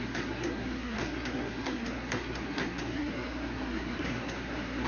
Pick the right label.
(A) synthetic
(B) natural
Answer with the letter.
A